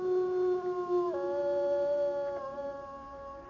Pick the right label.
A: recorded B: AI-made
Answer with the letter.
A